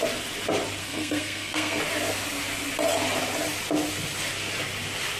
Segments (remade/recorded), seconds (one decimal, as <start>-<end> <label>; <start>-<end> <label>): 0.0-0.8 recorded; 0.8-1.8 remade; 1.8-5.2 recorded